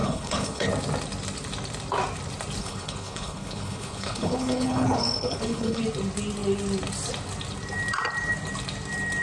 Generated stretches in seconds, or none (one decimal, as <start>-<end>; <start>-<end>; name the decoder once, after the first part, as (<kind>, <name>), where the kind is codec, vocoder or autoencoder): 0.0-0.7 (codec, HILCodec); 2.6-5.8